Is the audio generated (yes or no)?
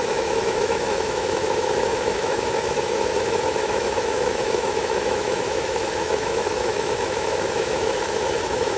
yes